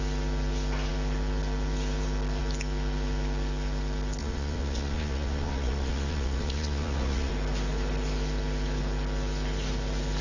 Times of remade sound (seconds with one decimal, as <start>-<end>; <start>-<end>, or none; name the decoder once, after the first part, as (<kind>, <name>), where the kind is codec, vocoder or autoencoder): 4.2-7.3 (vocoder, Vocos)